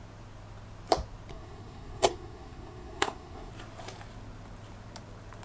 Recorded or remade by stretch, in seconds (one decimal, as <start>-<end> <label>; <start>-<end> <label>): 0.0-1.3 recorded; 1.3-3.5 remade; 3.5-5.4 recorded

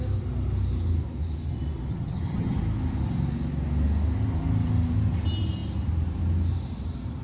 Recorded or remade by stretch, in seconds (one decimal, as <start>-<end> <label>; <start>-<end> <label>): 0.0-1.9 recorded; 1.9-2.6 remade; 2.6-7.2 recorded

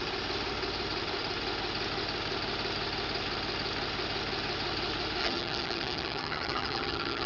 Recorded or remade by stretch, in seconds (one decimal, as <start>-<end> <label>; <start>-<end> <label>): 0.0-5.2 recorded; 5.2-7.3 remade

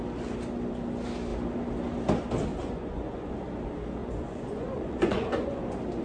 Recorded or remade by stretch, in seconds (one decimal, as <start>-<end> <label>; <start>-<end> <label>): 0.0-2.5 recorded; 2.5-3.3 remade; 3.3-4.0 recorded; 4.0-5.6 remade; 5.6-6.0 recorded

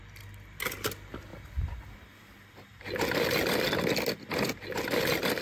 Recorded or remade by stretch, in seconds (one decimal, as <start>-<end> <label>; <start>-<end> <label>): 0.0-5.4 recorded

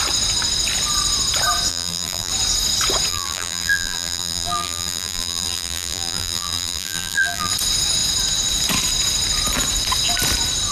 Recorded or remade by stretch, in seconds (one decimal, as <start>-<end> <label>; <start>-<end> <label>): 0.0-1.7 recorded; 1.7-2.3 remade; 2.3-3.1 recorded; 3.1-7.5 remade; 7.5-10.7 recorded